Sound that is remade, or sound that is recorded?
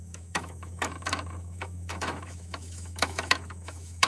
remade